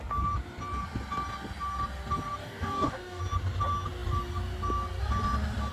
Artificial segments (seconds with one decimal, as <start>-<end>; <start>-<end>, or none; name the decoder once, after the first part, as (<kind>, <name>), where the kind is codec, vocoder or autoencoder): 2.4-3.2 (codec, DAC)